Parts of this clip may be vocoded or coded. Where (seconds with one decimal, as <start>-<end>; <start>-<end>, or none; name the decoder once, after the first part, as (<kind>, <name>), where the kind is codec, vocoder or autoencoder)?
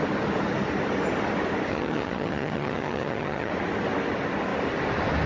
1.7-3.5 (vocoder, HiFi-GAN)